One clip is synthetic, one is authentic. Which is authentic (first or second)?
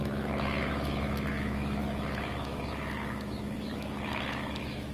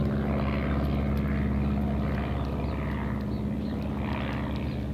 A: second